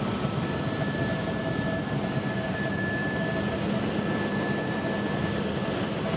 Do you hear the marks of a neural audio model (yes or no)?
no